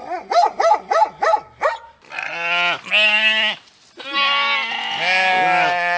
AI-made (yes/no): no